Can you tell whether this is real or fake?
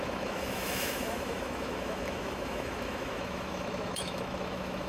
fake